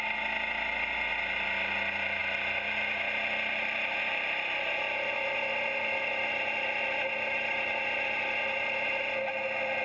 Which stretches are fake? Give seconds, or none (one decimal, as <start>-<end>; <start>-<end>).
none